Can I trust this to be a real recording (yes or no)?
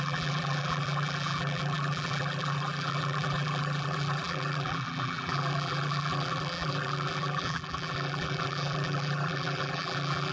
no